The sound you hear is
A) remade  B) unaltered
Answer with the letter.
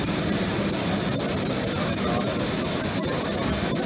B